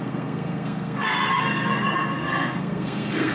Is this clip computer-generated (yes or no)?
yes